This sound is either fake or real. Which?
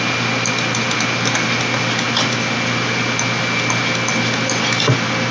real